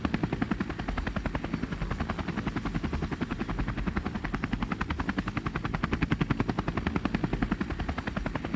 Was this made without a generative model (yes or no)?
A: yes